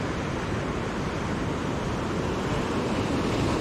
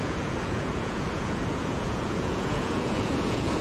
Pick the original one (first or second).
first